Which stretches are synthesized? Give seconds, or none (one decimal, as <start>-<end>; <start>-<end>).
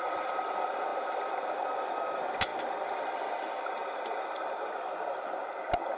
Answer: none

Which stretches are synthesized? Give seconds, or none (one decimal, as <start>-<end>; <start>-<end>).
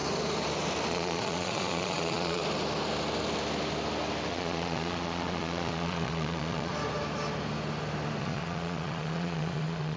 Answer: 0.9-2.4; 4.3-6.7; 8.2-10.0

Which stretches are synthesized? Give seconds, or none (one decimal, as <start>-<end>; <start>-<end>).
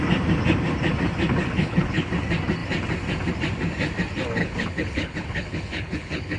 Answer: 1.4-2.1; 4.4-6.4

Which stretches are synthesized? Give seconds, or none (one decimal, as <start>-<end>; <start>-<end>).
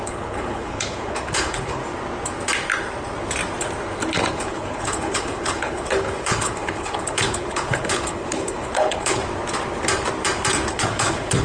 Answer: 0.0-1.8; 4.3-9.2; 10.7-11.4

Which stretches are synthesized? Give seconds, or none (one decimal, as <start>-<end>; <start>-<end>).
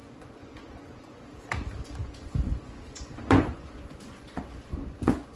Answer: 0.0-1.4; 2.0-5.4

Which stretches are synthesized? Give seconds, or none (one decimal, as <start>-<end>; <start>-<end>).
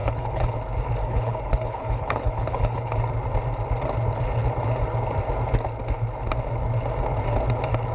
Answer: 0.0-0.6; 1.0-2.9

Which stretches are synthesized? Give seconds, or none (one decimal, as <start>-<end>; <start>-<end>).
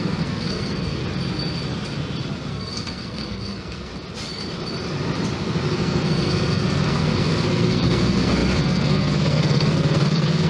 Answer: 0.0-1.0; 2.5-3.9; 5.7-10.5